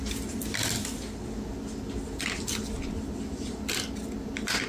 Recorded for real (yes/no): yes